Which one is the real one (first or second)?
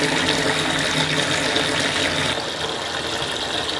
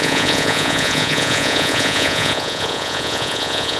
first